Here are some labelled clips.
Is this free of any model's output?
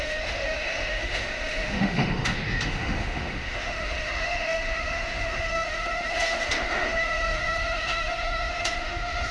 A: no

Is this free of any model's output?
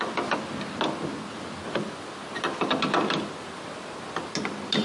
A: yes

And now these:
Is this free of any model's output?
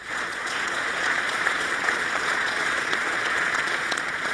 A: no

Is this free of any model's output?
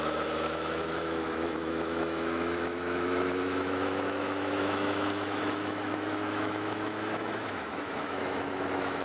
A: no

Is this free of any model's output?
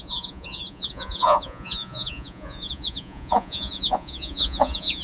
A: no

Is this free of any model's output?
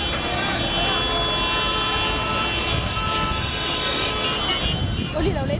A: yes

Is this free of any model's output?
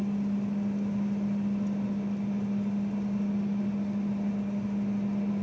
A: yes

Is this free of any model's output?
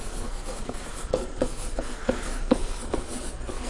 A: no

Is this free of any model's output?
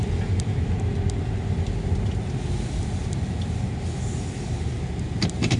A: yes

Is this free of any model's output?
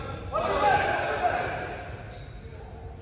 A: yes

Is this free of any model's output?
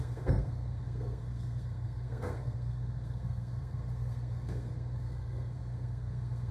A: no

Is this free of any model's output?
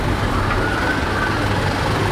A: yes